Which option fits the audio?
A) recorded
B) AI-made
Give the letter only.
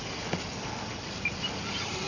A